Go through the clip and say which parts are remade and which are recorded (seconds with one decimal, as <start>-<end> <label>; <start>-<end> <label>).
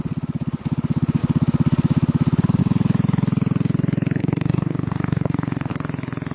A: 0.0-4.2 recorded; 4.2-5.7 remade; 5.7-6.3 recorded